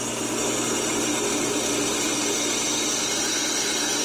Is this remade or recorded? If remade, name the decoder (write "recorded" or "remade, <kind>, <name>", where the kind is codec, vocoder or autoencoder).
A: recorded